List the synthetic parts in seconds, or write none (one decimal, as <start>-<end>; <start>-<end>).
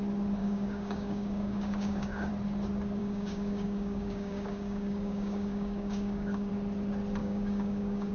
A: 0.4-2.3; 3.0-6.5; 7.2-8.1